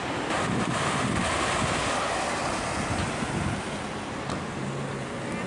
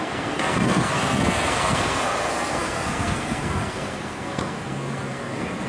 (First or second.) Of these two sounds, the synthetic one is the second